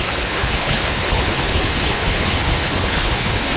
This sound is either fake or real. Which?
fake